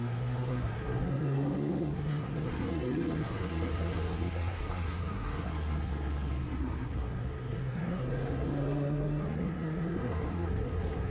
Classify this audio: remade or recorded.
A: remade